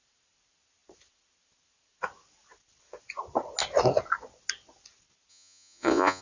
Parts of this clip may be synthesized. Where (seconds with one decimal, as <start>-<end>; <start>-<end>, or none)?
5.3-6.2